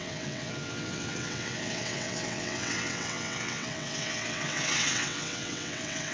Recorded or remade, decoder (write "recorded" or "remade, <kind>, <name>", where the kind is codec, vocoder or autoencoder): remade, vocoder, WaveNeXt